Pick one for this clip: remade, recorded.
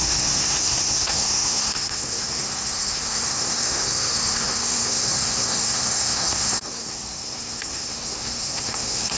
remade